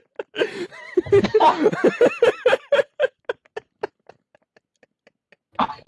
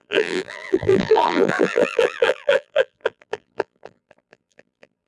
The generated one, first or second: second